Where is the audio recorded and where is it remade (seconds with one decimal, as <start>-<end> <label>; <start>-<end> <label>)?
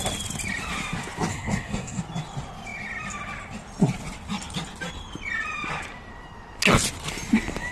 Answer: 0.0-1.3 recorded; 1.3-2.0 remade; 2.0-7.7 recorded